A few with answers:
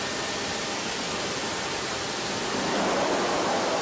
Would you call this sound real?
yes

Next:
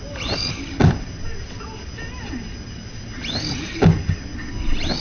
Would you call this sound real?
yes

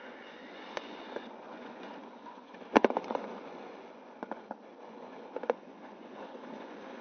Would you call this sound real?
no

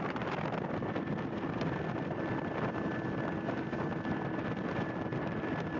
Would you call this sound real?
yes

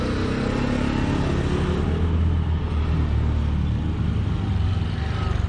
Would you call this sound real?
yes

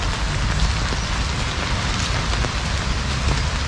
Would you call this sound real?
yes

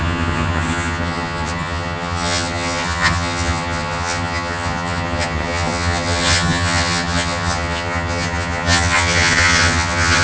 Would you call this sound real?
no